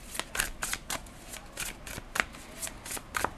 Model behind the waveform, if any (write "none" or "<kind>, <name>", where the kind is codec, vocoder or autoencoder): none